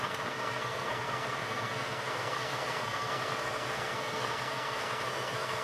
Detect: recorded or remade remade